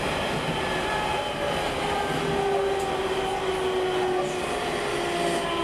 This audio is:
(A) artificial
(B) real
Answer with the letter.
B